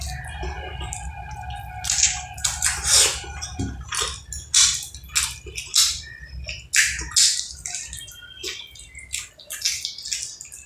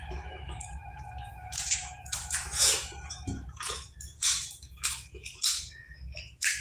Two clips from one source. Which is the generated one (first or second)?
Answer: second